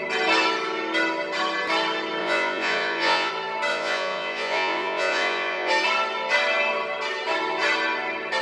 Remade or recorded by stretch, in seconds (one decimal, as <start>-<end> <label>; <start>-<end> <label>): 0.0-2.2 recorded; 2.2-3.3 remade; 3.3-3.7 recorded; 3.7-5.7 remade; 5.7-8.4 recorded